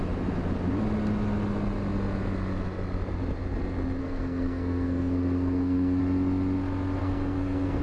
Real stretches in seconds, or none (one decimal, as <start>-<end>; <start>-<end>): 0.0-4.0; 6.0-7.0